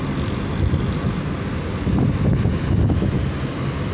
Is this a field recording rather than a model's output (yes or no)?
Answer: yes